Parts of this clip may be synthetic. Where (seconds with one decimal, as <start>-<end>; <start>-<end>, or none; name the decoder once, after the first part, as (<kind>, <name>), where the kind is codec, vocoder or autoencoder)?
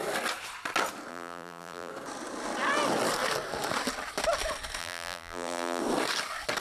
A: 1.1-1.9 (vocoder, BigVGAN v2); 4.8-5.8